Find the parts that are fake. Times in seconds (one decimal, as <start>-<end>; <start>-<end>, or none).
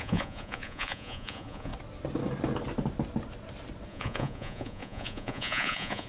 0.0-1.7; 3.9-6.1